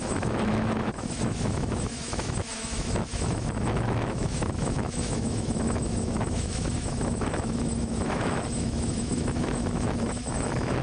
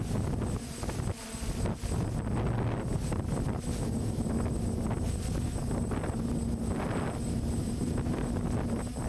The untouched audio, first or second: second